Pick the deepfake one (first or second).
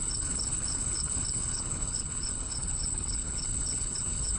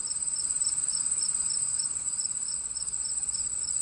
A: first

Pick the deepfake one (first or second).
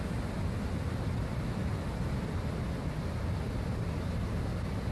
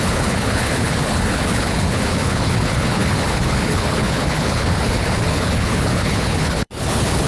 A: second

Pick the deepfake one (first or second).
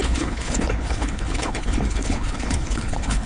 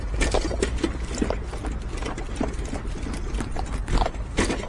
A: first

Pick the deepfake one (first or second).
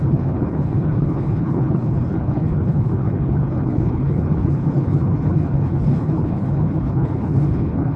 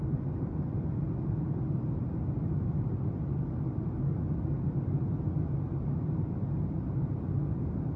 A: first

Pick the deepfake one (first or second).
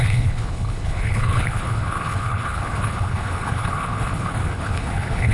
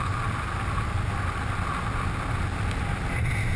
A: first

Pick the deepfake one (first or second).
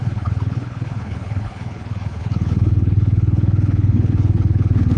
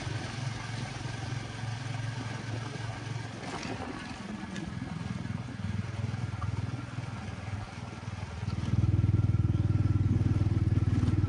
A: first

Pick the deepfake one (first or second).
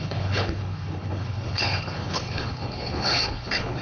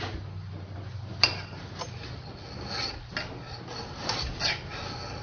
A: first